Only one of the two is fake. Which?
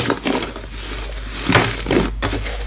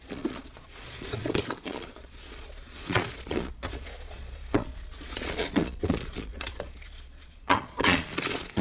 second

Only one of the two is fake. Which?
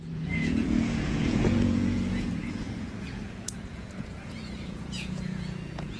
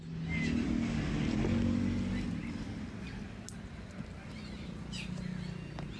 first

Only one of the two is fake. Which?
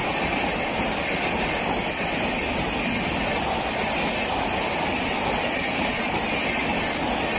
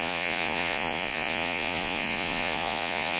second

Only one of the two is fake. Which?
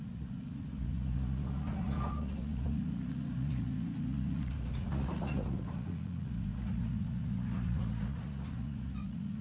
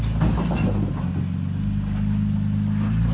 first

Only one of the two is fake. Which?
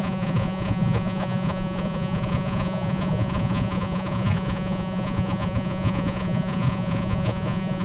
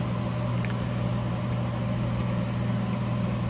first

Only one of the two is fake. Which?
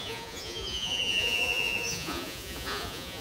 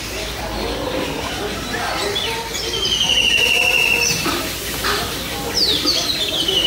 first